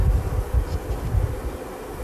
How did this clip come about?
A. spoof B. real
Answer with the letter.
B